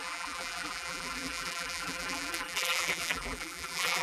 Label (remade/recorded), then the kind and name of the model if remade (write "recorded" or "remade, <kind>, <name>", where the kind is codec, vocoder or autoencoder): remade, vocoder, BigVGAN v2